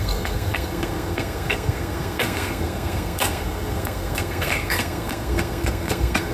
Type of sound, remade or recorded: remade